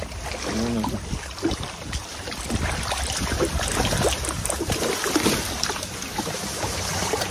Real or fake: real